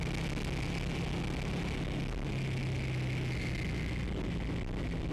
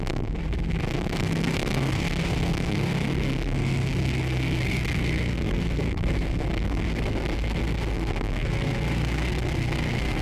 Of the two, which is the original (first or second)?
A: first